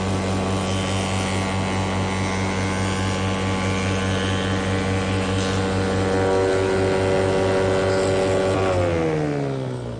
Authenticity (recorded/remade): recorded